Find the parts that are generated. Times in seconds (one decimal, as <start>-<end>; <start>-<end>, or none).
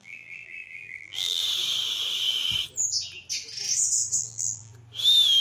0.0-1.4; 4.2-4.7